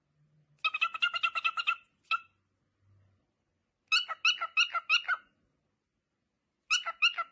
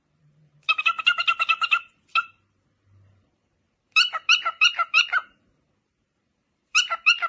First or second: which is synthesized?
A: second